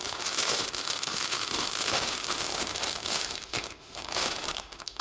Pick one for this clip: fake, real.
fake